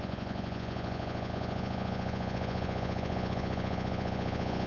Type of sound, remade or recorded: remade